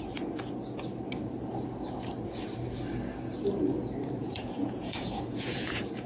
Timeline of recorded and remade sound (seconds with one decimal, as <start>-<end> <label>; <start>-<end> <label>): 0.0-4.2 recorded; 4.2-6.1 remade